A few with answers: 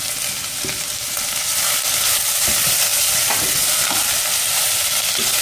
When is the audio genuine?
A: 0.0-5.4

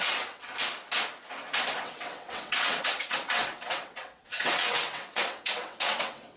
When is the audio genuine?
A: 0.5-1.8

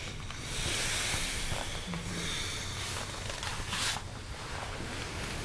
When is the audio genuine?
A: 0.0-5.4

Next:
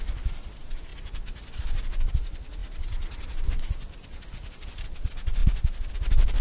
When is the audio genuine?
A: 0.0-6.4

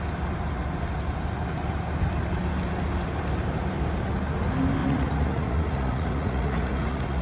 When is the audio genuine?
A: 0.0-4.8